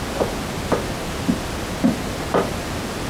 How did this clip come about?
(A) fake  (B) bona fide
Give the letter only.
B